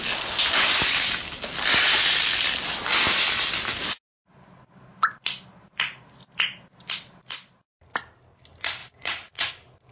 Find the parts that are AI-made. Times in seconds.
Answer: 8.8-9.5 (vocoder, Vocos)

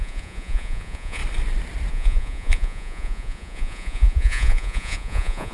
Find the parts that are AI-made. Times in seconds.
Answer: 0.0-1.2 (vocoder, Vocos); 1.9-5.5